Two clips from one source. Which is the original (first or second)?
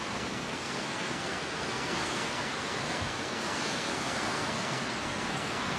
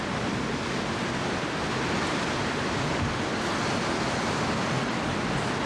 second